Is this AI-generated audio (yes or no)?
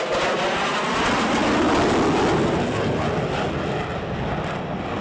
no